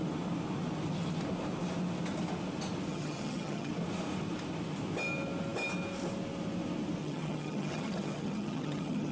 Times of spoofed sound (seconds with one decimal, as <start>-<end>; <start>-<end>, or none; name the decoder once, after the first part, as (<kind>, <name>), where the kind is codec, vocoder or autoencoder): 2.9-3.7 (vocoder, HiFi-GAN); 7.0-9.1